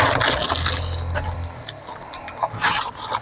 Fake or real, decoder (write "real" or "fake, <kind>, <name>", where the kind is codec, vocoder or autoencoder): real